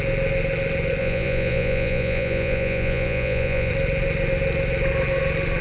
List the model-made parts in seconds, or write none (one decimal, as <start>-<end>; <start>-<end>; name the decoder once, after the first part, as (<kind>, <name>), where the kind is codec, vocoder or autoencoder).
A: 1.0-3.7 (vocoder, Vocos)